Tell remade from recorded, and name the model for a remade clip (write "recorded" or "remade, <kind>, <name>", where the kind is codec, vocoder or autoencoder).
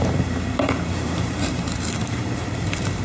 remade, vocoder, BigVGAN v2